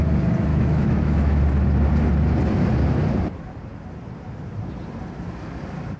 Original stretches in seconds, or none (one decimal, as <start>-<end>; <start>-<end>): 0.0-0.5; 1.4-6.0